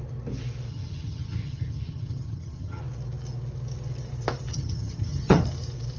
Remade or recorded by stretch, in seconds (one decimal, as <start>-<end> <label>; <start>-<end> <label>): 0.0-0.7 recorded; 0.7-2.8 remade; 2.8-4.5 recorded; 4.5-5.4 remade; 5.4-6.0 recorded